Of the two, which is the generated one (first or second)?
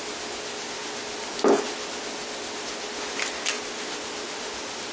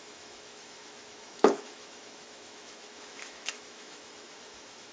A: second